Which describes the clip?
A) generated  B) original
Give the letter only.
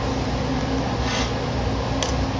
B